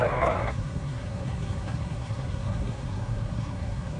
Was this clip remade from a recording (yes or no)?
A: yes